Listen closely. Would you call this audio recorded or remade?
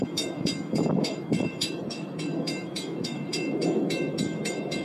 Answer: remade